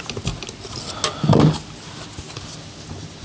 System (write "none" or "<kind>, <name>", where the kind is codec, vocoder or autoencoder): none